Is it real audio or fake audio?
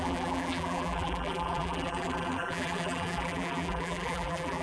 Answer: fake